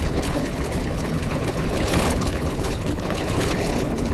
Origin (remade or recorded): remade